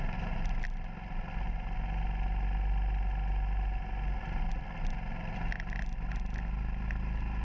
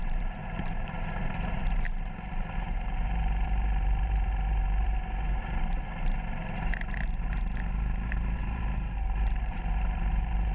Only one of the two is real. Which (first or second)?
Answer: first